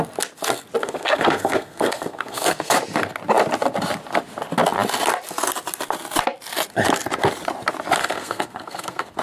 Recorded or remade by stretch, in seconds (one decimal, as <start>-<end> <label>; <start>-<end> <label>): 0.0-0.8 recorded; 0.8-2.7 remade; 2.7-8.0 recorded; 8.0-9.2 remade